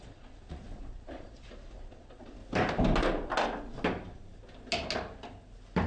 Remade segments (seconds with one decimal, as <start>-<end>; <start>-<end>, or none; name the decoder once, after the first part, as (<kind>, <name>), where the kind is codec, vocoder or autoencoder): 0.0-2.4 (vocoder, Vocos)